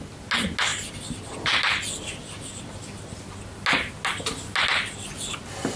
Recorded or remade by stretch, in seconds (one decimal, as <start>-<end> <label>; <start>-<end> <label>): 0.0-5.8 recorded